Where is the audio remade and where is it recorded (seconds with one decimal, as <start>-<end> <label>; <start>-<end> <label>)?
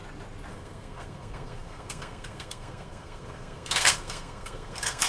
0.0-0.5 recorded; 0.5-5.1 remade